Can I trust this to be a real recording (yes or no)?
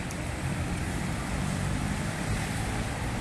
no